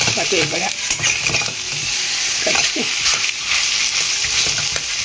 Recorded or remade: recorded